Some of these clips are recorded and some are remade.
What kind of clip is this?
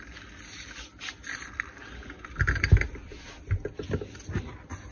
recorded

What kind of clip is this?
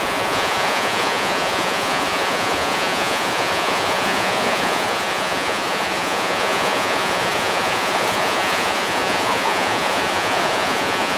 remade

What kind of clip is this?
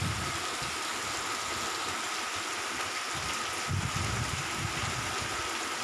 recorded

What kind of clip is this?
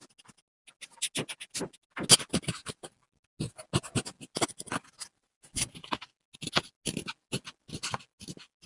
recorded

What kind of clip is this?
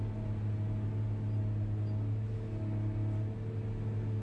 recorded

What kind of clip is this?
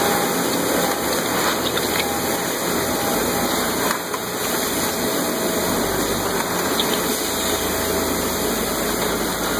recorded